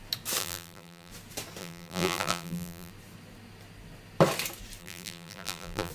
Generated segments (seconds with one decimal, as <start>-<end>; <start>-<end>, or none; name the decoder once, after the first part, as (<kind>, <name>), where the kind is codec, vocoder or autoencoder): 0.4-1.1 (vocoder, BigVGAN v2); 1.6-2.9; 4.8-5.9

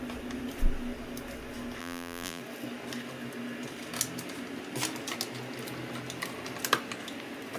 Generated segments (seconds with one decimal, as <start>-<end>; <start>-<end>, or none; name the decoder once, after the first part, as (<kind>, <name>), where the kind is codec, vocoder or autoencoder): 1.8-2.4 (vocoder, BigVGAN v2)

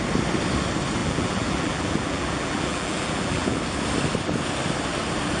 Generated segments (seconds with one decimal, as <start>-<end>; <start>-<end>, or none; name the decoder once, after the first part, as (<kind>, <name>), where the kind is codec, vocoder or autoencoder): 1.0-3.6 (vocoder, BigVGAN v2)

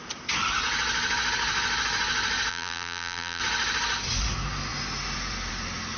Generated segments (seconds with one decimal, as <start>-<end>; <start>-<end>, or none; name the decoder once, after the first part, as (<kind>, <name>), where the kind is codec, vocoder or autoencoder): 2.5-3.4 (vocoder, BigVGAN v2)

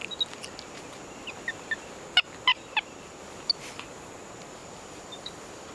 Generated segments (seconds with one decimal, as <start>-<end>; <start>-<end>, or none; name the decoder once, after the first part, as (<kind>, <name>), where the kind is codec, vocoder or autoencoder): 2.5-3.2 (vocoder, BigVGAN v2); 4.6-5.7

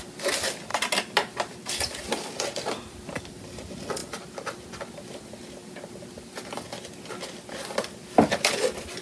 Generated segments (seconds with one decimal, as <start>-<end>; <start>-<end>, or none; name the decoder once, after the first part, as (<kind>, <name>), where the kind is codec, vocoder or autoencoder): 0.7-3.2 (vocoder, BigVGAN v2); 4.0-4.8; 5.6-6.2